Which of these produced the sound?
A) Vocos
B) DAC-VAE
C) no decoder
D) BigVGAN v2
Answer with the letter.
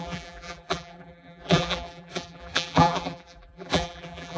D